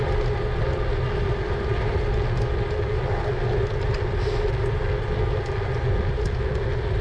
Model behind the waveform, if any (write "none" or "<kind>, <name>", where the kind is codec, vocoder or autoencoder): none